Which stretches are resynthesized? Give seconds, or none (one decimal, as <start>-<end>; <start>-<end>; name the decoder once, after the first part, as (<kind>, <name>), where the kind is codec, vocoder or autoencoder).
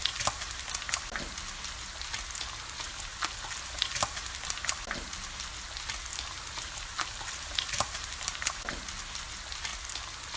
6.1-8.7 (vocoder, BigVGAN v2)